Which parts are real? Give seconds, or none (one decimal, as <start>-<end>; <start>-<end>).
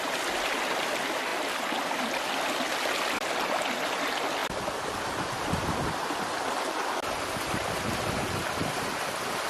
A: 0.0-9.5